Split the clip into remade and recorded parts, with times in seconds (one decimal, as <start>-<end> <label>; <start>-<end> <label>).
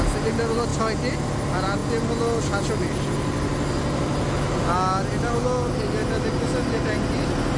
0.0-7.6 recorded